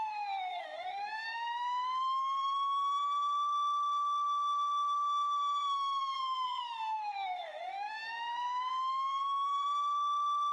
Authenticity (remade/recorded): recorded